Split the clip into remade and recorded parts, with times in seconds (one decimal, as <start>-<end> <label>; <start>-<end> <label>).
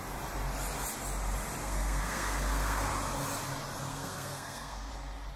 0.0-1.6 recorded; 1.6-2.9 remade; 2.9-3.9 recorded; 3.9-4.9 remade; 4.9-5.4 recorded